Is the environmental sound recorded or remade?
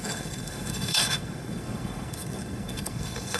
remade